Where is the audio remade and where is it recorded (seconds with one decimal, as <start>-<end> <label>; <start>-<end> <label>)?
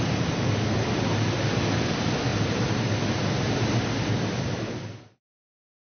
0.0-5.8 recorded